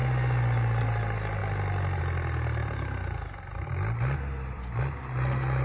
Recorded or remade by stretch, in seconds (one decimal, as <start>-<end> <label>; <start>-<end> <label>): 0.0-1.4 recorded; 1.4-2.0 remade; 2.0-2.6 recorded; 2.6-4.8 remade; 4.8-5.6 recorded